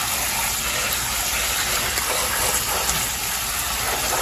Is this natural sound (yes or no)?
yes